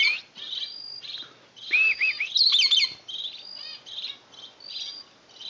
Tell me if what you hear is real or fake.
real